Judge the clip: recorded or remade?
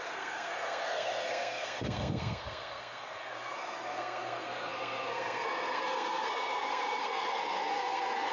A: remade